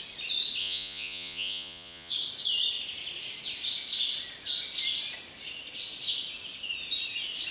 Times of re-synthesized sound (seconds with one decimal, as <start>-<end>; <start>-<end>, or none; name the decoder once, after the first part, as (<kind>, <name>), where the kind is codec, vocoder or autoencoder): 0.6-2.1 (vocoder, Vocos)